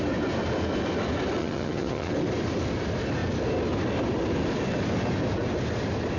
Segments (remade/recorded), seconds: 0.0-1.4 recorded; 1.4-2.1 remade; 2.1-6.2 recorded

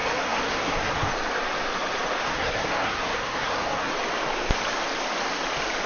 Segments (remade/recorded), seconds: 0.0-1.1 remade; 1.1-2.2 recorded; 2.2-3.9 remade; 3.9-5.9 recorded

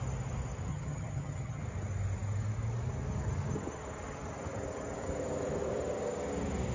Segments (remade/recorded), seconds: 0.0-0.7 recorded; 0.7-1.6 remade; 1.6-6.7 recorded

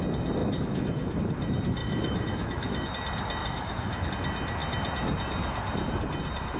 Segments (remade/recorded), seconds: 0.0-0.4 recorded; 0.4-1.2 remade; 1.2-1.8 recorded; 1.8-2.9 remade; 2.9-3.4 recorded; 3.4-4.1 remade; 4.1-6.6 recorded

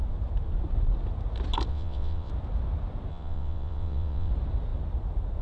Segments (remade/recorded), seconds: 0.0-1.7 recorded; 1.7-2.3 remade; 2.3-3.1 recorded; 3.1-4.3 remade; 4.3-5.4 recorded

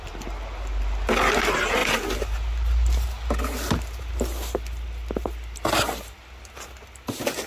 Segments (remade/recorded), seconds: 0.0-7.5 recorded